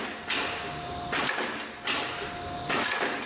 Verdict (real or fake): real